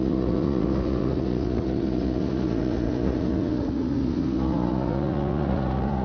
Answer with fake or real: fake